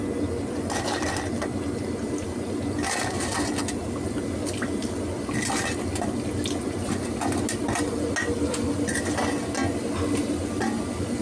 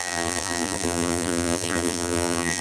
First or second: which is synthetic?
second